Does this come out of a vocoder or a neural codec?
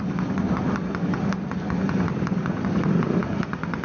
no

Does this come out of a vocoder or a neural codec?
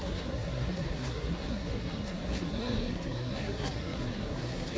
yes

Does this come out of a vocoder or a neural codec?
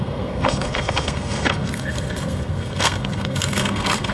yes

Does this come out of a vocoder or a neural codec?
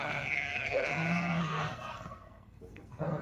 yes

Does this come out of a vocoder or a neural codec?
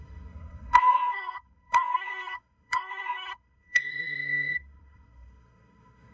yes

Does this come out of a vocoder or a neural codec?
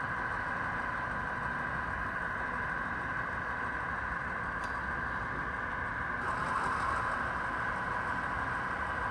no